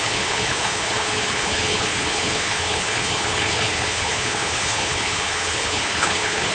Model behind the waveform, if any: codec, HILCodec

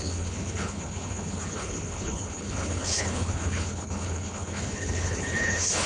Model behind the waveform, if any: codec, HILCodec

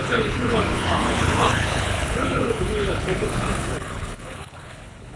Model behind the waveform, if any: codec, HILCodec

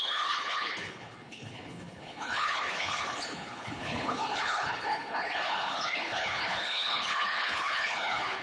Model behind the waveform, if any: codec, HILCodec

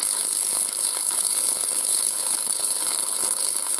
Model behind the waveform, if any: codec, HILCodec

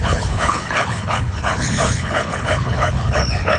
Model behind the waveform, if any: codec, HILCodec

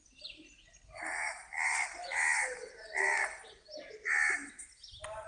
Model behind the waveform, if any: none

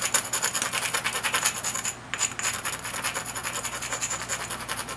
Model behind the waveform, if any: none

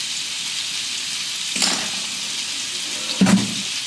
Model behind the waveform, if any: none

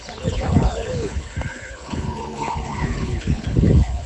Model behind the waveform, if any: codec, HILCodec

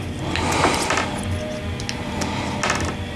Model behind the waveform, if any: none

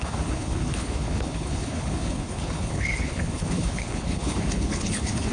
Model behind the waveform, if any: codec, HILCodec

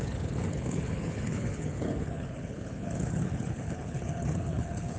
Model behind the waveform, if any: codec, HILCodec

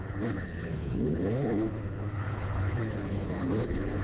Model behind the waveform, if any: codec, HILCodec